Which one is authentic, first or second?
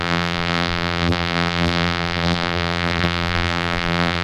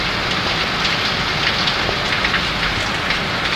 second